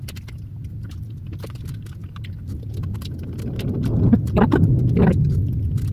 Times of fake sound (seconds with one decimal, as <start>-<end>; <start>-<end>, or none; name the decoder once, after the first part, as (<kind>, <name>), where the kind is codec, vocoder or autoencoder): none